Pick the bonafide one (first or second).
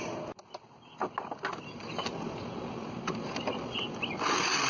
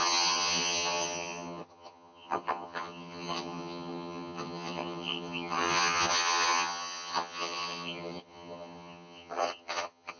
first